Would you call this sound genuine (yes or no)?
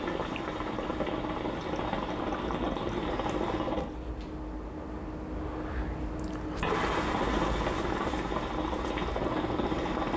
yes